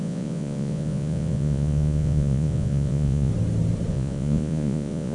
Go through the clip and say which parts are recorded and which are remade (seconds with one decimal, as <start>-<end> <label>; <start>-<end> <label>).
0.0-3.3 remade; 3.3-3.9 recorded; 3.9-5.1 remade